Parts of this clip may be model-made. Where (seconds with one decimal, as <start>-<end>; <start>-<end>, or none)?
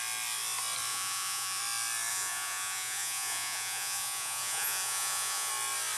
0.9-1.6; 2.1-5.5